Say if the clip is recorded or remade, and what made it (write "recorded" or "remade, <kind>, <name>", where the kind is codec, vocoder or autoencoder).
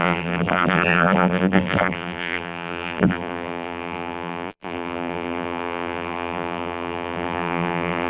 remade, vocoder, BigVGAN v2